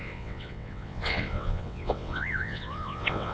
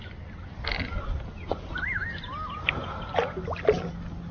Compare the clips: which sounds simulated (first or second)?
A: first